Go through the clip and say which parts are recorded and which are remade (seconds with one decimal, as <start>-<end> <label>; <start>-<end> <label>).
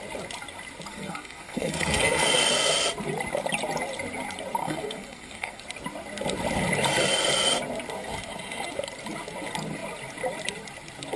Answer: 0.0-0.9 recorded; 0.9-2.3 remade; 2.3-4.6 recorded; 4.6-5.6 remade; 5.6-11.2 recorded